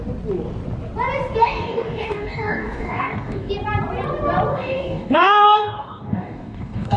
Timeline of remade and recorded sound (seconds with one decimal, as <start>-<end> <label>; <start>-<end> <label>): 0.0-1.4 recorded; 1.4-3.5 remade; 3.5-4.5 recorded; 4.5-7.0 remade